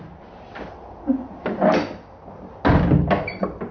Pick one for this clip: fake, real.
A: real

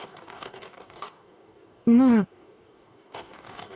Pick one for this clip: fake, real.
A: fake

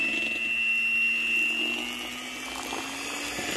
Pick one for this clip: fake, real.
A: real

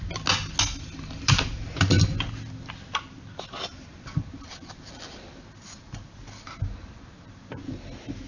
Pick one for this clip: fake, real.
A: real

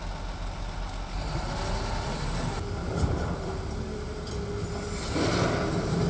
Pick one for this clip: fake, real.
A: real